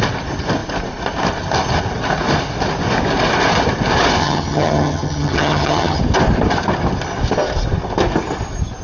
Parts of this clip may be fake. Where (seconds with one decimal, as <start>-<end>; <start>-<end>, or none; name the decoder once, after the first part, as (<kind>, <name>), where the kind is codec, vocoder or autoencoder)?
4.2-6.0 (vocoder, HiFi-GAN)